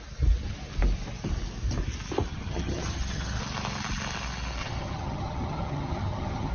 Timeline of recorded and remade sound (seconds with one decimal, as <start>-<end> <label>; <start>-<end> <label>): 0.0-2.3 recorded; 2.3-3.4 remade; 3.4-4.6 recorded; 4.6-6.5 remade